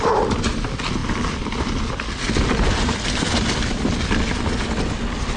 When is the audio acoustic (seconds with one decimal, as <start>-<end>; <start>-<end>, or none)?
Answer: 0.0-5.4